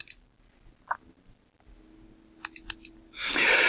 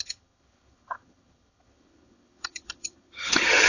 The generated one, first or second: second